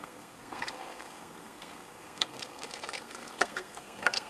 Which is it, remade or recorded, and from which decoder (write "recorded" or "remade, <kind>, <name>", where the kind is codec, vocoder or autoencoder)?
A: remade, codec, SNAC